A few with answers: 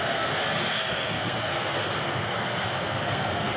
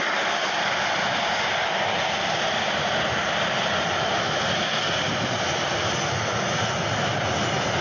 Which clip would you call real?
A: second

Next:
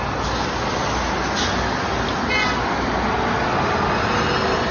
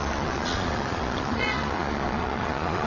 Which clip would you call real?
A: first